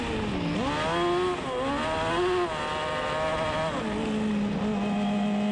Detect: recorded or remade recorded